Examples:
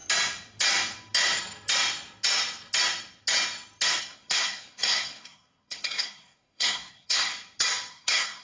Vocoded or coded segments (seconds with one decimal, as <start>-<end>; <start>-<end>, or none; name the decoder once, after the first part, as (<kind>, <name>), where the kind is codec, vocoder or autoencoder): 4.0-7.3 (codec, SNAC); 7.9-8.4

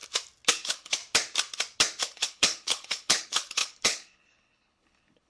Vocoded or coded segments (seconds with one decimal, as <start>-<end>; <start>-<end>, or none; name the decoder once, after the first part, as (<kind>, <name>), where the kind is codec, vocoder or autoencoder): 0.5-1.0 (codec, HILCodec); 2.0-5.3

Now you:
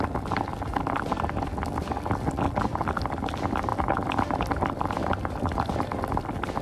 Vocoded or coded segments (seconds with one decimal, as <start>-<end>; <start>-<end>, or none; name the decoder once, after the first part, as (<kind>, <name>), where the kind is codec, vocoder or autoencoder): none